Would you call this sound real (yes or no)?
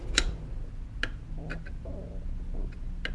yes